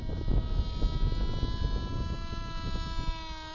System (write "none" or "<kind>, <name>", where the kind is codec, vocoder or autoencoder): none